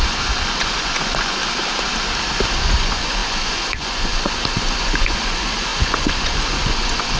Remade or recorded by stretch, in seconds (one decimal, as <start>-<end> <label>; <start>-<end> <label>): 0.0-1.4 remade; 1.4-2.6 recorded; 2.6-7.2 remade

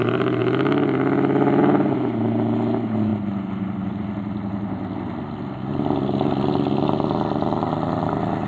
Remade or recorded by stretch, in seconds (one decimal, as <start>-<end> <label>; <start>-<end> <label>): 0.0-8.5 recorded

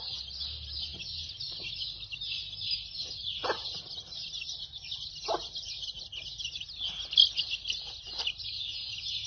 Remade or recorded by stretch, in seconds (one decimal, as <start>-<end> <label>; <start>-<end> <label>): 0.0-9.3 recorded